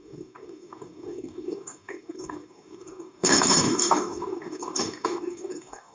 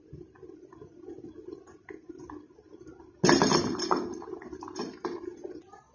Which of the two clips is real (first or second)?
second